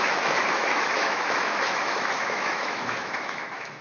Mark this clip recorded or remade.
remade